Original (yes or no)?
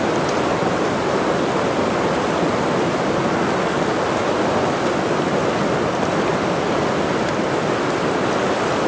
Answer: yes